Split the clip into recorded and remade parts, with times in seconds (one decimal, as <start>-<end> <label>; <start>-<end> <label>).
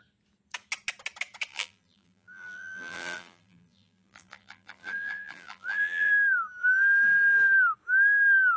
0.0-1.5 recorded; 1.5-6.1 remade; 6.1-8.6 recorded